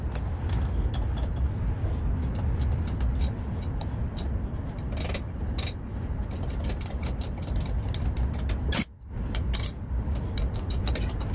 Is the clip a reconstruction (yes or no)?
no